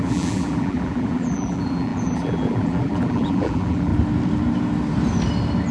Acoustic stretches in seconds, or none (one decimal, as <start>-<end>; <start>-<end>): 3.9-5.7